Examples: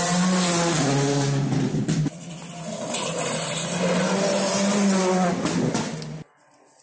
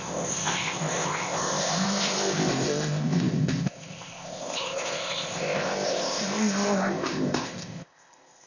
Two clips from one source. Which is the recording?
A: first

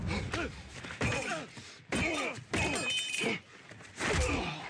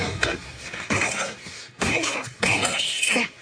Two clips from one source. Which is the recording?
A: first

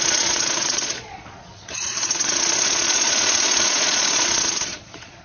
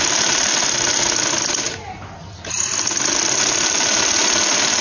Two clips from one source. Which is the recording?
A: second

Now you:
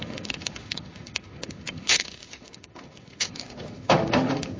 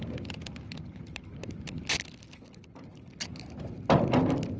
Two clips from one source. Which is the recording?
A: second